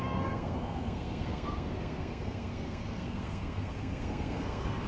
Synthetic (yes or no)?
yes